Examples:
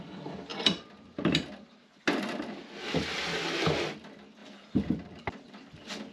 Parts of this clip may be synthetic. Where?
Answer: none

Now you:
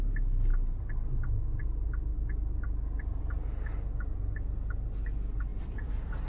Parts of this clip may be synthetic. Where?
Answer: 5.5-6.3 (vocoder, BigVGAN v2)

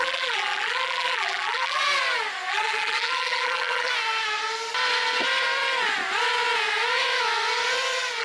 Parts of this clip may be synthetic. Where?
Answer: 0.0-1.8 (vocoder, BigVGAN v2); 2.5-3.9

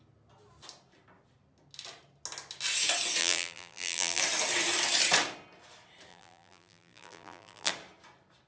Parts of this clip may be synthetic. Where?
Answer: 3.2-4.2 (vocoder, BigVGAN v2); 6.1-7.7

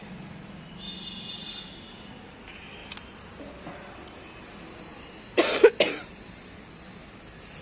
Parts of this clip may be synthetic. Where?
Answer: 2.8-3.4 (vocoder, BigVGAN v2)

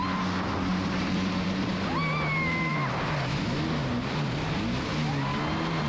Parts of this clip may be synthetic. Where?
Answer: 0.7-1.7 (vocoder, BigVGAN v2)

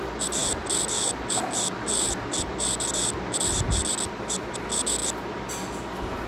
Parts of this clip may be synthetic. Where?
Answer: none